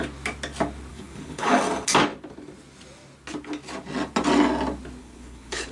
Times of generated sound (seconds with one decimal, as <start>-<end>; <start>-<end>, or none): 0.9-1.6; 5.0-5.7